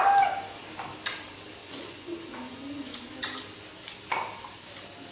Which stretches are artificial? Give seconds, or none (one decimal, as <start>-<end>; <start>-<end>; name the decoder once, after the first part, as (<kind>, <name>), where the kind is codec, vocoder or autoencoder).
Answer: 1.6-3.1 (vocoder, Vocos)